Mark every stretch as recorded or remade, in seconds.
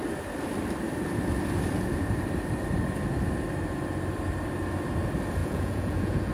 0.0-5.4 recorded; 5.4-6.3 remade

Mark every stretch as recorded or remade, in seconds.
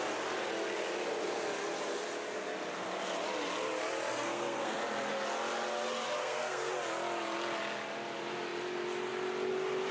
0.0-4.1 recorded; 4.1-4.8 remade; 4.8-6.2 recorded; 6.2-6.7 remade; 6.7-9.9 recorded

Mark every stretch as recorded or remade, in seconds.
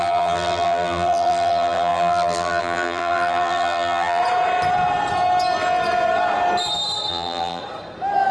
0.0-4.2 remade; 4.2-7.1 recorded; 7.1-7.6 remade; 7.6-8.3 recorded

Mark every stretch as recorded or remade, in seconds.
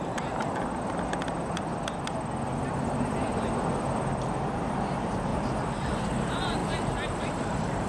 0.0-0.4 remade; 0.4-4.6 recorded; 4.6-5.3 remade; 5.3-5.9 recorded; 5.9-6.6 remade; 6.6-7.2 recorded; 7.2-7.9 remade